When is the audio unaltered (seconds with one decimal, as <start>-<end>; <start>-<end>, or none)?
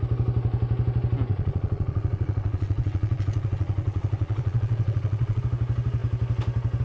0.0-1.3; 5.4-6.8